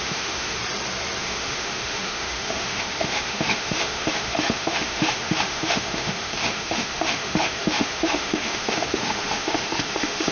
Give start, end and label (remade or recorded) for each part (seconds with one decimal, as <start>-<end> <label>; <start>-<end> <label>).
0.0-0.6 remade; 0.6-1.2 recorded; 1.2-10.3 remade